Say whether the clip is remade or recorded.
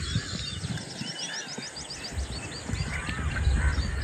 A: recorded